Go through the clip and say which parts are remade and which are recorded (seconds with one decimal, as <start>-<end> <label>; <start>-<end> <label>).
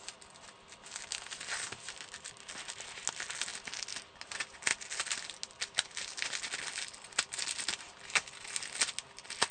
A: 0.0-9.5 recorded